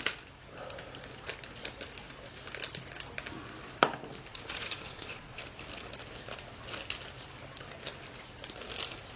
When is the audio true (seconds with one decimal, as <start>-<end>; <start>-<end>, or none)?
0.0-4.3; 5.4-9.2